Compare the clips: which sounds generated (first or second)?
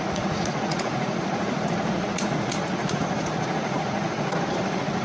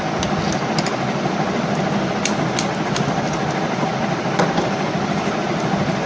first